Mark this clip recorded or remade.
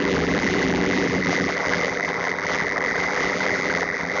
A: remade